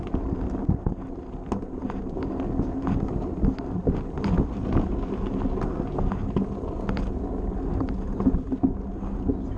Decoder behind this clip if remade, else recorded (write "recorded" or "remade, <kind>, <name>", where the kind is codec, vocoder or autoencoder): recorded